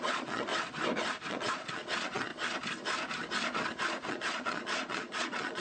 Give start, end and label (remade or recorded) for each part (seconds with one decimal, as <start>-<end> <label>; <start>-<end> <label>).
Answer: 0.0-0.5 remade; 0.5-1.3 recorded; 1.3-2.3 remade; 2.3-4.1 recorded; 4.1-5.6 remade